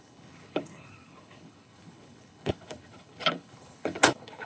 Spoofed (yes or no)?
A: yes